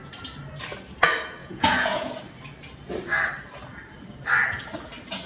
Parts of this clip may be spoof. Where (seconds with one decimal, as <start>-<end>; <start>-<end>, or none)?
1.4-2.1